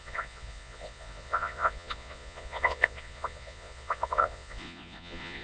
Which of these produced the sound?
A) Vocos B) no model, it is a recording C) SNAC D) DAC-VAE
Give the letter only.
A